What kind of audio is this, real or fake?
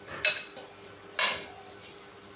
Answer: real